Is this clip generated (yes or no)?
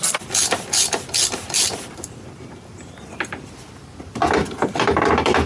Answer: yes